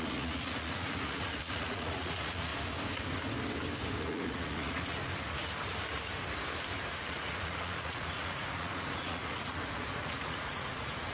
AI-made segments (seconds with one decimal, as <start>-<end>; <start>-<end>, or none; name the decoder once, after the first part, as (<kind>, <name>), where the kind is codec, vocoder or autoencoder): 0.0-2.5 (vocoder, Vocos); 4.0-5.0; 6.9-11.1